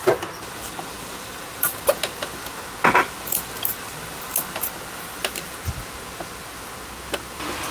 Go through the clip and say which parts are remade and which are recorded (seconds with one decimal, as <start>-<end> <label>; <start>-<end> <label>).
0.0-7.7 recorded